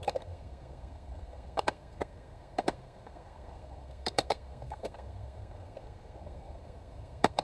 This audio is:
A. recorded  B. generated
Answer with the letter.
B